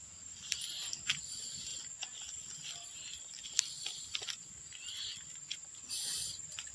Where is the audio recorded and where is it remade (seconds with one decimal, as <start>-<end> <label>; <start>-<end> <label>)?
0.0-1.7 remade; 1.7-2.5 recorded; 2.5-6.7 remade